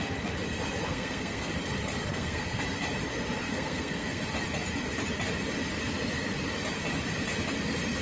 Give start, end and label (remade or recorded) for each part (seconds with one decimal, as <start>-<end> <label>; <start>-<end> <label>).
0.0-0.9 recorded; 0.9-1.5 remade; 1.5-2.1 recorded; 2.1-2.6 remade; 2.6-3.4 recorded; 3.4-4.2 remade; 4.2-8.0 recorded

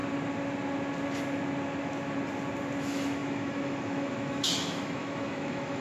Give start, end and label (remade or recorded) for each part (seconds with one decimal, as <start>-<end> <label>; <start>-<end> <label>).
0.0-2.8 recorded; 2.8-5.8 remade